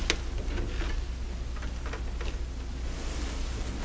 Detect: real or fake real